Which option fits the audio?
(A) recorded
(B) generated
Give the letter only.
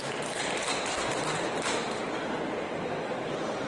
A